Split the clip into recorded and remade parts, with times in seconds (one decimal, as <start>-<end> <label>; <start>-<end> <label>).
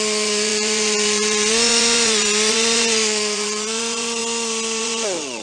0.0-4.2 remade; 4.2-4.8 recorded; 4.8-5.4 remade